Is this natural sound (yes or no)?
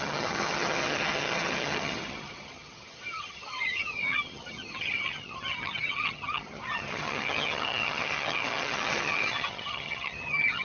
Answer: no